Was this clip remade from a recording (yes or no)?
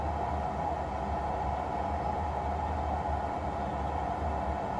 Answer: no